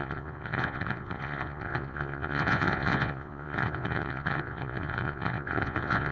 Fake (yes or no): yes